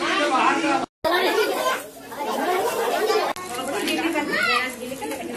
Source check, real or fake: real